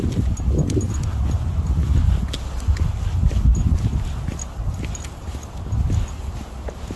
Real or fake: real